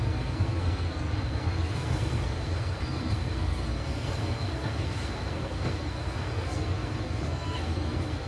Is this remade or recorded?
remade